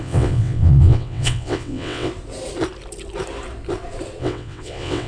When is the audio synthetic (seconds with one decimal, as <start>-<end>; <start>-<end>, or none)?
0.0-2.1; 4.2-5.1